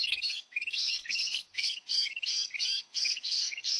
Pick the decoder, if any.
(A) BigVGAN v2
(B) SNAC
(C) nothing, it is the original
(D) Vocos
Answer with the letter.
B